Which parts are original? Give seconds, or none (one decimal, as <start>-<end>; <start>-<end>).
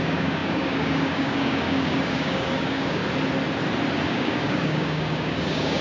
3.0-4.1